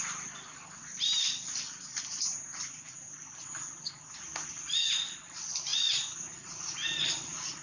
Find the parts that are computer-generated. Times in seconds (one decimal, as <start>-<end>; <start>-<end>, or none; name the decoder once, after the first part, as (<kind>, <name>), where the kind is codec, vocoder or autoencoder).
5.7-6.7 (vocoder, Vocos)